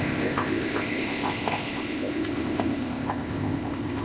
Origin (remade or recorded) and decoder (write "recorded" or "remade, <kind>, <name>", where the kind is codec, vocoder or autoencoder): remade, codec, ZipCodec